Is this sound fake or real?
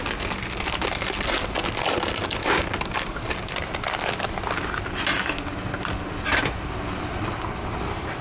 real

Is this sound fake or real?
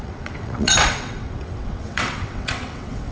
fake